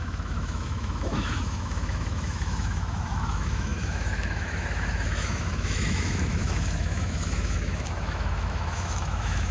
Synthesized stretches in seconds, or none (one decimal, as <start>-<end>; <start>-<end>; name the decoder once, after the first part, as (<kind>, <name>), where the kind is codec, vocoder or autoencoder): 0.0-9.5 (autoencoder, DAC-VAE)